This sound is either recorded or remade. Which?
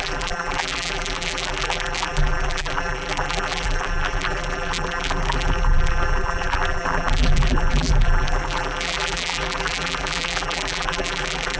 remade